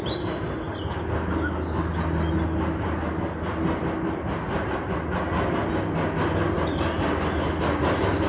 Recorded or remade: recorded